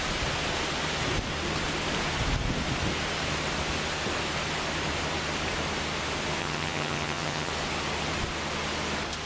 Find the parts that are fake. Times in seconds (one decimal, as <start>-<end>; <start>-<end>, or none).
6.4-7.5